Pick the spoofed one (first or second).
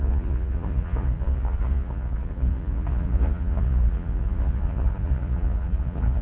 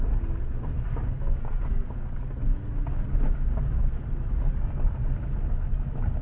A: first